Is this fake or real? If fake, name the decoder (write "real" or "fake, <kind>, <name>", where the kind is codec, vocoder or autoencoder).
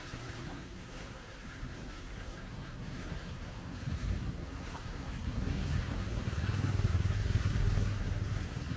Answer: fake, codec, SNAC